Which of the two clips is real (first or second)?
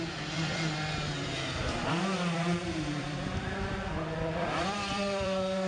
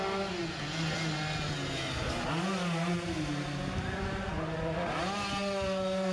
second